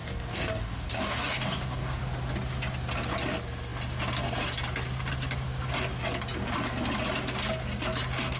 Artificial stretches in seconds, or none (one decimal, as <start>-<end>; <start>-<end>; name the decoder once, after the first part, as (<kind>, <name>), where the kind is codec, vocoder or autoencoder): 0.0-2.0 (codec, DAC)